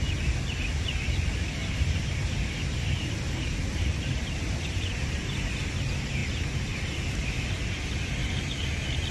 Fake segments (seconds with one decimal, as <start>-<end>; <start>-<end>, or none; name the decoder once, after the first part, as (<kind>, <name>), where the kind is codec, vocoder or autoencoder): 1.6-5.6 (vocoder, BigVGAN v2); 6.2-7.8